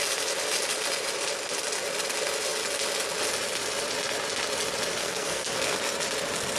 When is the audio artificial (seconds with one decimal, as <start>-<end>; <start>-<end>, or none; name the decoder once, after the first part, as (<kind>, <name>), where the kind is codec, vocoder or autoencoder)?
5.0-5.8 (codec, SNAC)